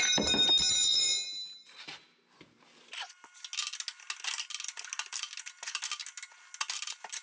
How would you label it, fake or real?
real